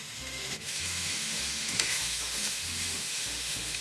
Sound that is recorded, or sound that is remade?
remade